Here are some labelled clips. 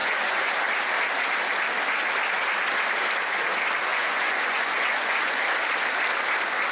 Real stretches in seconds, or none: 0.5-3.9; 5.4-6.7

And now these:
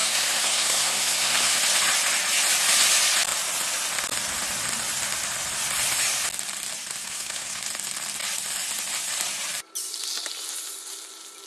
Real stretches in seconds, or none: 1.6-7.0; 7.6-11.5

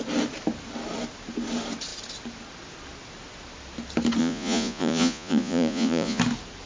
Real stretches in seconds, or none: 0.0-4.2; 6.2-6.7